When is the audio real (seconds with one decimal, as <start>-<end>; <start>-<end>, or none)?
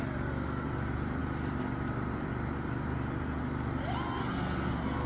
0.0-5.1